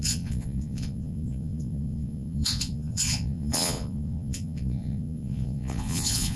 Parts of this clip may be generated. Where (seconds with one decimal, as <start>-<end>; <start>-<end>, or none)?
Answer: 0.0-6.4